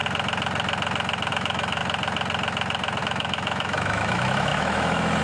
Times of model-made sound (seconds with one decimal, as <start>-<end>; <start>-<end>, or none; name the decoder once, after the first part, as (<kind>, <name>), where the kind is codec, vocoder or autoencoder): 1.3-1.8 (autoencoder, DAC-VAE); 3.0-5.2